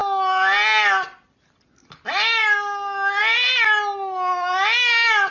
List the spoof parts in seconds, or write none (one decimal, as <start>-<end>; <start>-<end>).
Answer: none